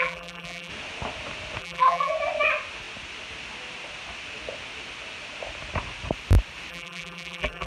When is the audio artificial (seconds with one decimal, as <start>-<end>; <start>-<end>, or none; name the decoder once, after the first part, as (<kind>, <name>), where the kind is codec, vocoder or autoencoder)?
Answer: 0.0-0.7 (vocoder, BigVGAN v2); 1.6-2.1; 6.7-7.7